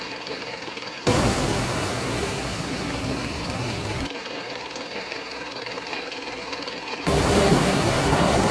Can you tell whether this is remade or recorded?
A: remade